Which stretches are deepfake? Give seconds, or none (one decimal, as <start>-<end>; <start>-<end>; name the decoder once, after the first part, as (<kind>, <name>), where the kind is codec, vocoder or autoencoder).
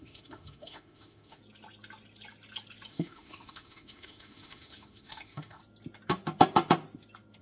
0.0-1.4 (autoencoder, DAC-VAE); 2.9-5.6